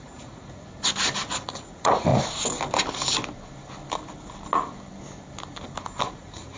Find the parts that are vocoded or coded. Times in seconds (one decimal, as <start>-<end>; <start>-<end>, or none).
0.0-0.7; 1.3-2.1; 6.1-6.6